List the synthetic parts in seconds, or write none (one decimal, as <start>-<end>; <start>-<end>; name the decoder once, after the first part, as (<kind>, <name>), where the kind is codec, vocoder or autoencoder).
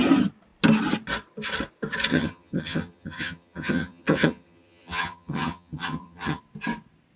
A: 2.1-6.4 (vocoder, HiFi-GAN)